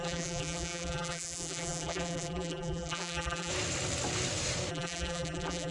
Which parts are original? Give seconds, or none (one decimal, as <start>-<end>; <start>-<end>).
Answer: 3.5-4.7